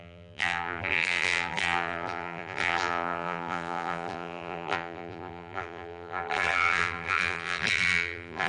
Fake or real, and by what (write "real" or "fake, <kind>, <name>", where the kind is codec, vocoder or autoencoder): fake, vocoder, BigVGAN v2